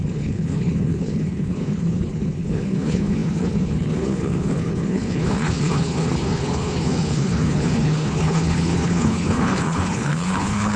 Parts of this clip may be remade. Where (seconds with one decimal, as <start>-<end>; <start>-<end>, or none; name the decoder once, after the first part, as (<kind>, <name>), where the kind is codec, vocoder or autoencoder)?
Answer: 0.0-10.8 (codec, HILCodec)